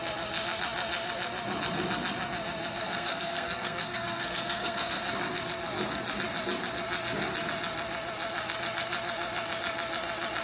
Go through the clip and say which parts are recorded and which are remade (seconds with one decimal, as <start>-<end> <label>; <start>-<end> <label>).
0.0-2.7 recorded; 2.7-5.0 remade; 5.0-10.4 recorded